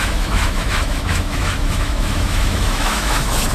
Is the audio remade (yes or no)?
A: yes